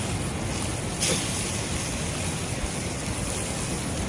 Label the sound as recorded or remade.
recorded